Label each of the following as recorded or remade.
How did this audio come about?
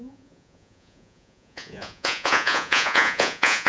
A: remade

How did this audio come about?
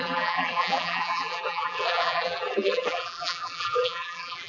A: remade